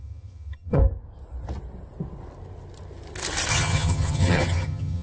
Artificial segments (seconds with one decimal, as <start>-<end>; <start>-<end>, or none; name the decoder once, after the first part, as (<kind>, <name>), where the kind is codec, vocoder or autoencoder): 0.0-0.8 (vocoder, HiFi-GAN); 3.5-5.0